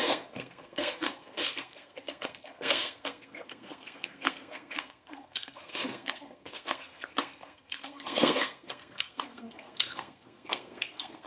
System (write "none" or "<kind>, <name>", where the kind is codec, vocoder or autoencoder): codec, SNAC